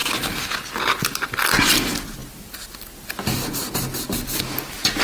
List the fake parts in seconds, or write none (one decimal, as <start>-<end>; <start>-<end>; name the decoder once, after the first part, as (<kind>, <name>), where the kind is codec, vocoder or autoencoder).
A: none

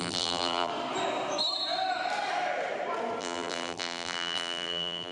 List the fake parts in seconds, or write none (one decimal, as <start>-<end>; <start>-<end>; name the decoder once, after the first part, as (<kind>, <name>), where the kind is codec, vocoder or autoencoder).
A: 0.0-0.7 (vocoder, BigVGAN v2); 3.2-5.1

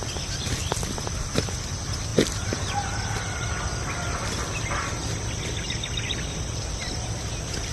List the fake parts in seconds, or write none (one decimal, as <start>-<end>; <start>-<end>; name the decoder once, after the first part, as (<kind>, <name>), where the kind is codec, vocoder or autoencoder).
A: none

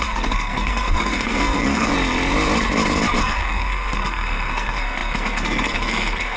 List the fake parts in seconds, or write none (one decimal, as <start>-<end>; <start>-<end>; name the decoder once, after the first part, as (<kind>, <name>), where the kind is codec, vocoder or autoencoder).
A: 0.0-1.9 (codec, SNAC); 3.2-6.4

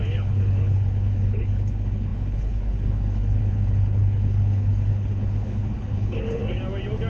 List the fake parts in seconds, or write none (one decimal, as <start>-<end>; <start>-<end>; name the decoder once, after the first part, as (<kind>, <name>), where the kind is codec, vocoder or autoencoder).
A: 0.0-6.4 (codec, HILCodec)